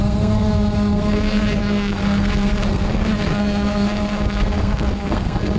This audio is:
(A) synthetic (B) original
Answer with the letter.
A